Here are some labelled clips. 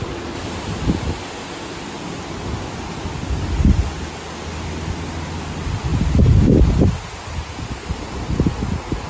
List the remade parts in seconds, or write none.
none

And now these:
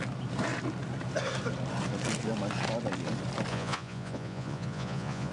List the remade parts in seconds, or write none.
3.5-5.3 (vocoder, Vocos)